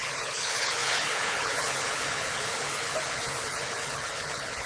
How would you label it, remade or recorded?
remade